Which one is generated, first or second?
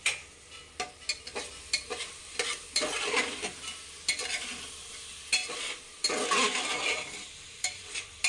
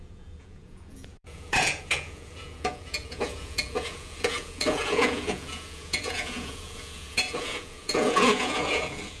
second